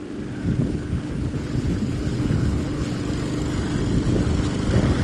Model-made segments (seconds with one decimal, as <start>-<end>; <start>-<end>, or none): 0.4-3.0